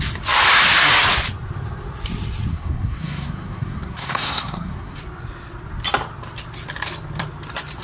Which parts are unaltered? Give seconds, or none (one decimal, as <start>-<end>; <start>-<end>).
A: 0.0-2.5; 5.0-7.8